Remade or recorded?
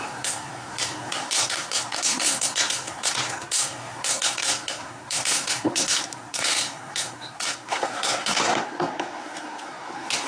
remade